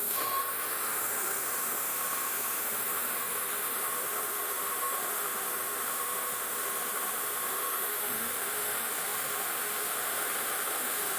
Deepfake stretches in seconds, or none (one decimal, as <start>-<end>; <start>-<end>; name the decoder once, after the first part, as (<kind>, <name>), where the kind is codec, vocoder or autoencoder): 0.0-11.2 (autoencoder, DAC-VAE)